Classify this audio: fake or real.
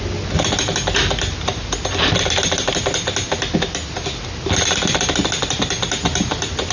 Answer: real